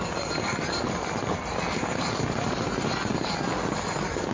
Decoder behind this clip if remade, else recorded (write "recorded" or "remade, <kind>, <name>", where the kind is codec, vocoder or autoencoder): recorded